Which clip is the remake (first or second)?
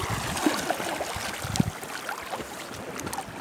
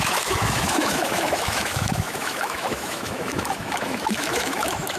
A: second